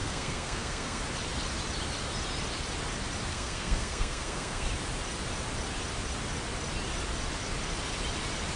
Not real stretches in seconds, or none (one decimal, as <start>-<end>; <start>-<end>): 0.0-1.0; 3.3-4.7